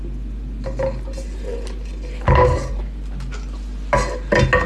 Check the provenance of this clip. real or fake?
real